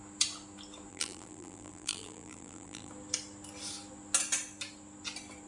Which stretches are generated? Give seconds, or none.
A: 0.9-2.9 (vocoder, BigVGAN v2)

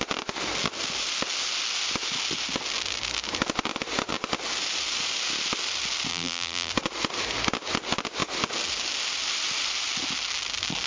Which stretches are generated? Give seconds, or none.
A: 6.1-6.7 (vocoder, BigVGAN v2)

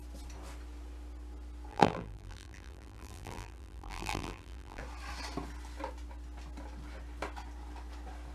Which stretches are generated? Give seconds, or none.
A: 1.7-4.8 (vocoder, BigVGAN v2)

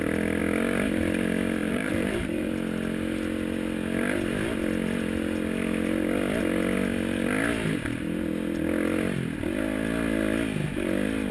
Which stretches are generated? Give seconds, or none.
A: 1.6-2.5 (vocoder, BigVGAN v2)